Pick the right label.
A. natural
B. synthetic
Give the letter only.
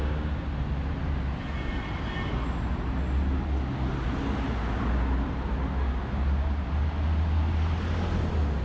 A